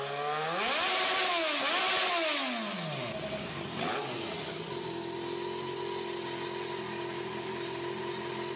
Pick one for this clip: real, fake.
real